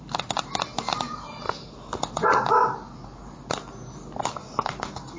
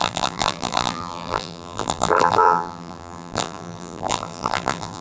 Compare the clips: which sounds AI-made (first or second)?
second